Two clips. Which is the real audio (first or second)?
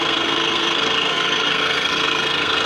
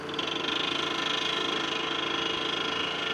second